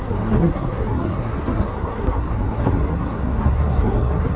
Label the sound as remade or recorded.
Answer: remade